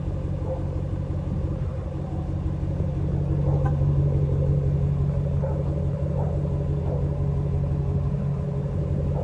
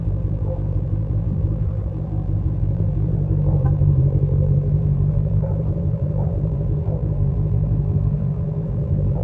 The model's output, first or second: second